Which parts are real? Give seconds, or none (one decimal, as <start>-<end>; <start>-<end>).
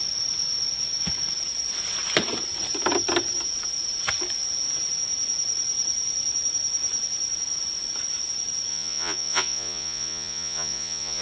0.0-8.7